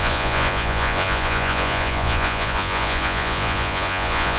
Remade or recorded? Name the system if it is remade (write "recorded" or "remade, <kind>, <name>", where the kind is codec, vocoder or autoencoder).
remade, vocoder, Vocos